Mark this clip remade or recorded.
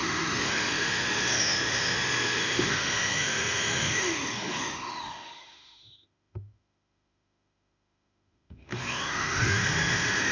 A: remade